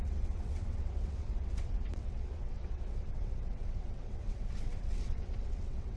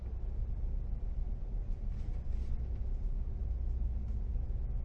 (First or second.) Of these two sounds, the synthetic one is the first